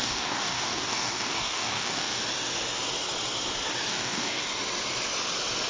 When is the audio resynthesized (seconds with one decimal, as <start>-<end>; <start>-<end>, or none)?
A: 0.0-2.2; 3.9-4.4